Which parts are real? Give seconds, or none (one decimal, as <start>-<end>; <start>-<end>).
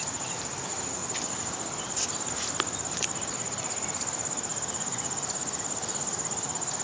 0.0-6.8